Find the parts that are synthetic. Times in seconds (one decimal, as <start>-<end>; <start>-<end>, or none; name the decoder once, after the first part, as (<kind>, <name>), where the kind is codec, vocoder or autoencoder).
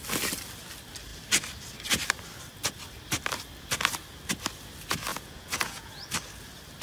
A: 5.1-6.0 (vocoder, Vocos)